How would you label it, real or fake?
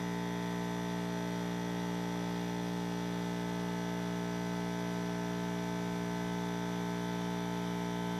real